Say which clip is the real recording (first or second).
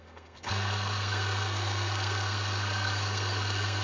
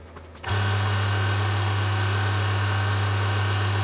second